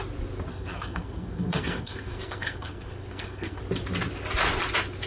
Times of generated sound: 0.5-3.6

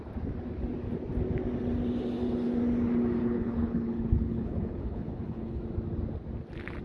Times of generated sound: 3.2-5.6

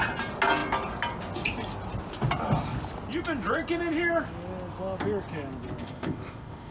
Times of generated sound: 5.8-6.7

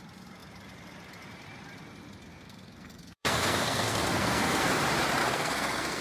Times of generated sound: 2.3-4.7; 5.2-6.0

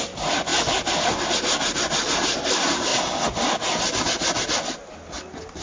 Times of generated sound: none

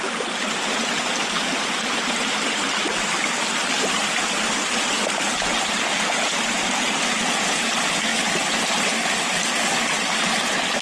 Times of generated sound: none